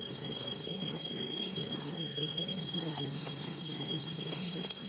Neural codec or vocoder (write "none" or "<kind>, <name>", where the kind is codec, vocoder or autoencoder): codec, SNAC